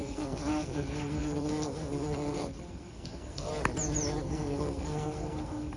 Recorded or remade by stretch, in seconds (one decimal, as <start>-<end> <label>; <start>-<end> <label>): 0.0-3.5 remade; 3.5-4.2 recorded; 4.2-5.8 remade